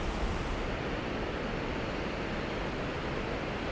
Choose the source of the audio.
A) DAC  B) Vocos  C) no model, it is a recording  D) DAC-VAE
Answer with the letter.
C